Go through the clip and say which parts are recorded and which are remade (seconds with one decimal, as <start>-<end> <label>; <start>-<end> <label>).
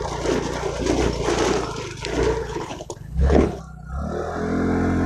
0.0-2.4 recorded; 2.4-3.6 remade; 3.6-5.1 recorded